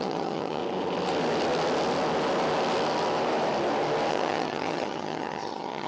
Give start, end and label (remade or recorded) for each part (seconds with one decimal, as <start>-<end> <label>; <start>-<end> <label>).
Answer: 0.0-0.6 remade; 0.6-4.1 recorded; 4.1-5.9 remade